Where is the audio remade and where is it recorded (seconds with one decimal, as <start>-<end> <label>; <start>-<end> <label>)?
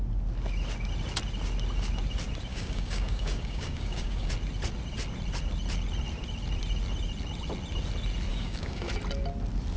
0.0-2.5 recorded; 2.5-4.3 remade; 4.3-8.3 recorded; 8.3-8.9 remade; 8.9-9.8 recorded